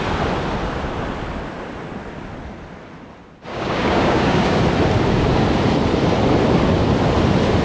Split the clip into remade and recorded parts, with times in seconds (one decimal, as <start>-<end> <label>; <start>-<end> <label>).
0.0-3.5 recorded; 3.5-4.6 remade; 4.6-7.6 recorded

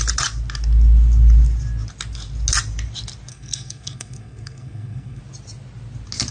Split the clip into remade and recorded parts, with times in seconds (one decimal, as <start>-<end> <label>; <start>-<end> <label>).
0.0-3.3 recorded; 3.3-5.2 remade; 5.2-6.3 recorded

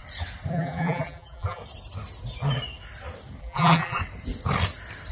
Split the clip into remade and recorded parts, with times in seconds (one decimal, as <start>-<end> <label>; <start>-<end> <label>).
0.0-0.5 recorded; 0.5-1.6 remade; 1.6-3.4 recorded; 3.4-4.0 remade; 4.0-5.1 recorded

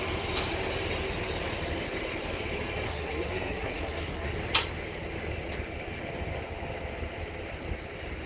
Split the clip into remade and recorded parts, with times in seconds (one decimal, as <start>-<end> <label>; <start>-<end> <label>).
0.0-2.9 recorded; 2.9-4.3 remade; 4.3-8.3 recorded